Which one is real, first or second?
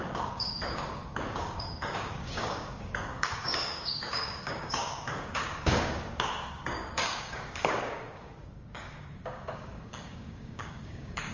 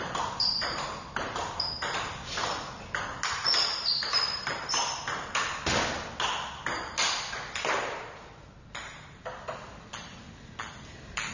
second